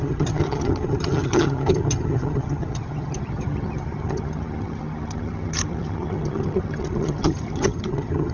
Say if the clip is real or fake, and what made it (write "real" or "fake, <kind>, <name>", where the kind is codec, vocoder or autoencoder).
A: fake, vocoder, HiFi-GAN